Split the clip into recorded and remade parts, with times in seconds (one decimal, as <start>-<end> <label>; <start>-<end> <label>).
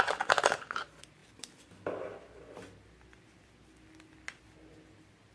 0.0-5.3 recorded